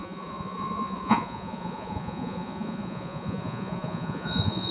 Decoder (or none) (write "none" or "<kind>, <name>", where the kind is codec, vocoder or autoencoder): vocoder, Vocos